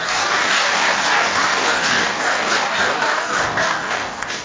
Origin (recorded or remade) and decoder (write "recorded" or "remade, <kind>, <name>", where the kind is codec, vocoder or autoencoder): remade, codec, DAC